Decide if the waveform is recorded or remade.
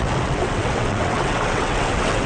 remade